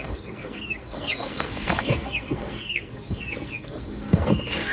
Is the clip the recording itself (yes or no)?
no